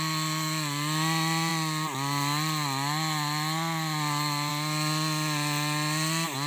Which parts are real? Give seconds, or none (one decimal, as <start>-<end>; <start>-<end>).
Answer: 0.0-6.5